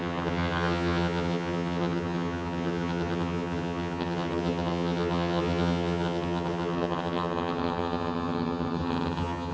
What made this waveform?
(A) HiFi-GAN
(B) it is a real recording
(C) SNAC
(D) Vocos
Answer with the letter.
A